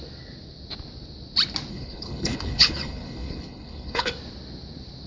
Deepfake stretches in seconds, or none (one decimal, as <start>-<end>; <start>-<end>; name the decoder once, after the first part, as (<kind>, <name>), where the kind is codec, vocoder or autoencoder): 1.7-4.1 (codec, HILCodec)